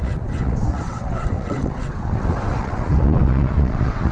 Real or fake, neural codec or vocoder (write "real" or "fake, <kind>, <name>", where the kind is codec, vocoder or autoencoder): fake, vocoder, WaveNeXt